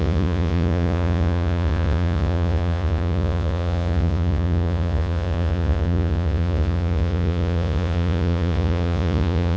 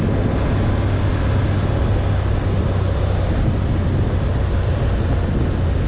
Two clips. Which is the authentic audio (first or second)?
second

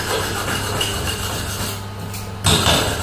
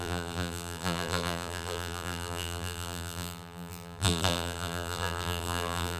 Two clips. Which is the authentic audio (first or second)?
first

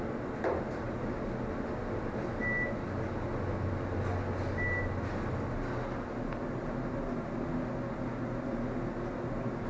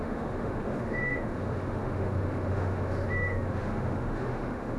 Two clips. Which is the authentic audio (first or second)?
first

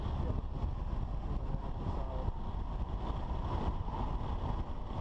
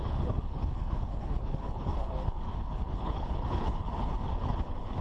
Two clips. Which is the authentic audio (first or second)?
first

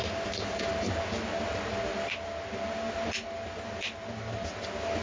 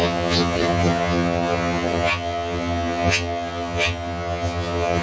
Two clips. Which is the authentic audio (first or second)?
first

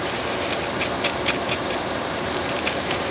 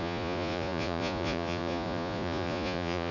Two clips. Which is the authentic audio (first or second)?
first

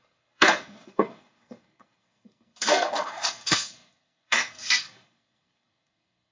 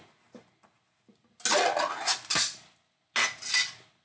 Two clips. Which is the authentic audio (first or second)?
second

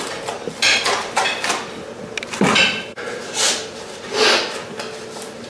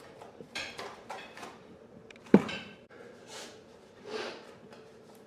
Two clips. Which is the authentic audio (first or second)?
first